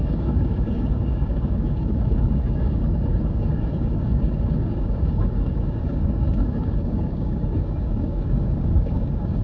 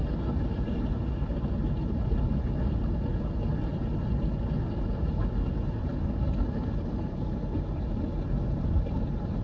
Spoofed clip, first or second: first